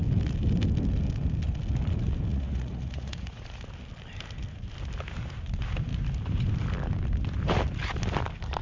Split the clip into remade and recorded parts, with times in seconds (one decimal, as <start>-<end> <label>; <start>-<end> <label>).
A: 0.0-2.3 recorded; 2.3-3.6 remade; 3.6-8.6 recorded